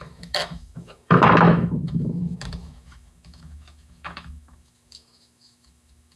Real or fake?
fake